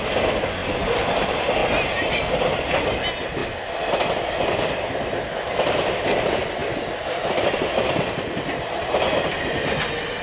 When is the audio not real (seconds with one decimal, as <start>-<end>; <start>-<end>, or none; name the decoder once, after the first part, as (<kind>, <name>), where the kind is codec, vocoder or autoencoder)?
none

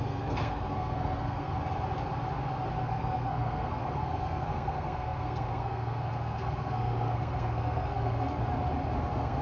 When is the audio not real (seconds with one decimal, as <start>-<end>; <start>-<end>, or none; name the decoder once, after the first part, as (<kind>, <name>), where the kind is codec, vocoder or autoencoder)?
0.0-1.5 (codec, SNAC); 2.8-8.4; 9.0-9.4

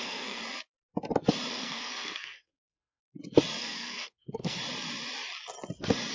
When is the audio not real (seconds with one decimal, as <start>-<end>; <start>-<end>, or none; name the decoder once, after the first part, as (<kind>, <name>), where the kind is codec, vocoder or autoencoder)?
0.0-0.4 (codec, SNAC); 1.5-3.0; 3.6-4.6

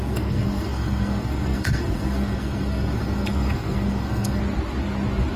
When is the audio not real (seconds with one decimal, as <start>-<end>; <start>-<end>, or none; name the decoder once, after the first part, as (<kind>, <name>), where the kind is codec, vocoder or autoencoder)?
0.0-4.4 (codec, SNAC)

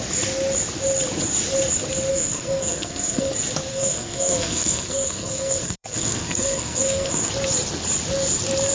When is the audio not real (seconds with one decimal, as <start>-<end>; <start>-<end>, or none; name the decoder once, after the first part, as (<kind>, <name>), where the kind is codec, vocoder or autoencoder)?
2.1-3.3 (codec, SNAC); 3.7-7.3